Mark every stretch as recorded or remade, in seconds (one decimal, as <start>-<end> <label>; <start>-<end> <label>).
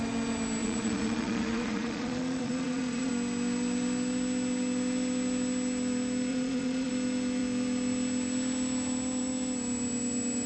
0.0-0.6 recorded; 0.6-3.1 remade; 3.1-6.3 recorded; 6.3-6.9 remade; 6.9-10.5 recorded